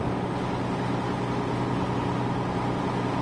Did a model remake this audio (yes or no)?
no